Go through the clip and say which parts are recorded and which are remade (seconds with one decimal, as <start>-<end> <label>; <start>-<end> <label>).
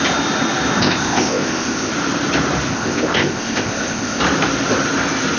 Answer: 0.0-0.8 recorded; 0.8-1.9 remade; 1.9-2.7 recorded; 2.7-4.2 remade; 4.2-5.4 recorded